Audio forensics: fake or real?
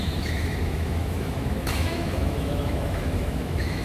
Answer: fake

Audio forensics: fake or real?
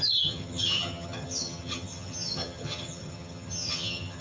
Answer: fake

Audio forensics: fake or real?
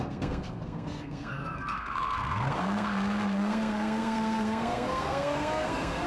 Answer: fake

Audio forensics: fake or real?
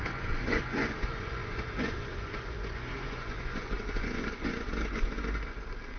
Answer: fake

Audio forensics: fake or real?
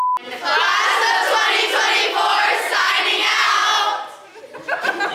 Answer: real